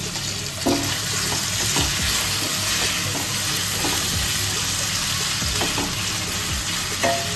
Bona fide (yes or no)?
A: yes